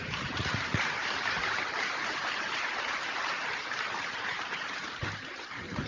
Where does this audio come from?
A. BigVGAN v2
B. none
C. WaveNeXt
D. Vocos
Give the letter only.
A